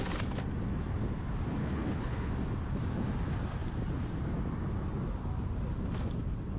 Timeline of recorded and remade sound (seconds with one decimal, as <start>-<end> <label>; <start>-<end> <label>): 0.0-1.6 recorded; 1.6-2.3 remade; 2.3-6.6 recorded

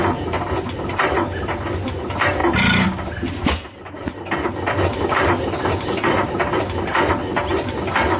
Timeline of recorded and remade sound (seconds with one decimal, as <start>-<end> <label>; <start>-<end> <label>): 0.0-8.2 recorded

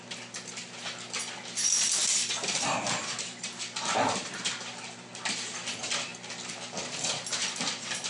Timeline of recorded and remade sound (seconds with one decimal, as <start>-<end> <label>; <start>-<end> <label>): 0.0-2.0 recorded; 2.0-5.1 remade; 5.1-8.1 recorded

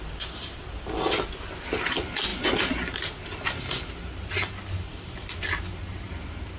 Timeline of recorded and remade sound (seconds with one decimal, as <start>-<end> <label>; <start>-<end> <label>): 0.0-6.6 recorded

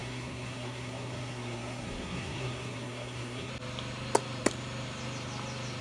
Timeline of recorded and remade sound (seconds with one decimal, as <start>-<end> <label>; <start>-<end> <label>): 0.0-3.5 remade; 3.5-5.8 recorded

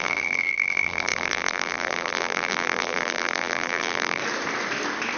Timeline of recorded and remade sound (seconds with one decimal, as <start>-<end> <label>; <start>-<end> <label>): 0.0-4.2 remade; 4.2-5.2 recorded